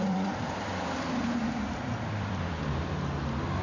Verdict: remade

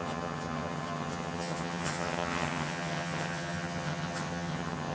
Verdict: remade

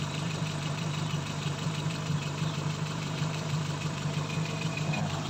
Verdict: remade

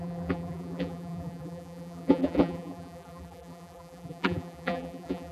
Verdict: remade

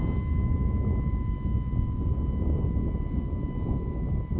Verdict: recorded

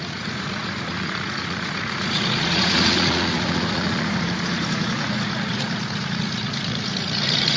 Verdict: remade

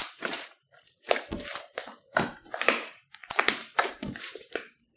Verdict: remade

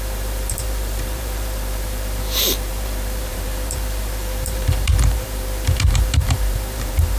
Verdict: remade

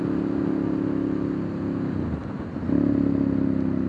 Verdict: recorded